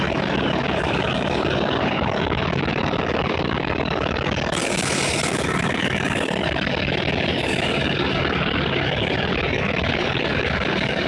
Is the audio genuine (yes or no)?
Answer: no